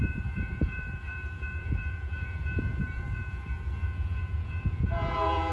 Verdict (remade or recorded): remade